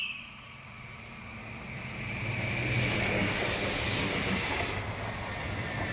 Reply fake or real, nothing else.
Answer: real